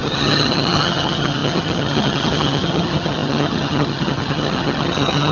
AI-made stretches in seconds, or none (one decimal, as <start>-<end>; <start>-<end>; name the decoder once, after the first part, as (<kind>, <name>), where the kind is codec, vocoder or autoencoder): 0.0-5.3 (vocoder, HiFi-GAN)